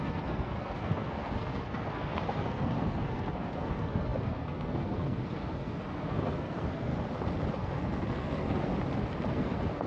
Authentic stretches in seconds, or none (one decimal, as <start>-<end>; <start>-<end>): 6.9-7.5; 8.7-9.3